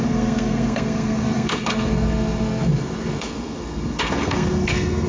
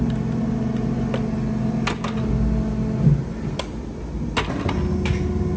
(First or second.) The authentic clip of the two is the second